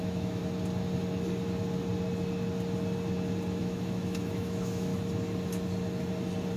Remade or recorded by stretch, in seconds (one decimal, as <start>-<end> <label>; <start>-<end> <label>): 0.0-0.4 remade; 0.4-3.6 recorded; 3.6-4.9 remade; 4.9-6.6 recorded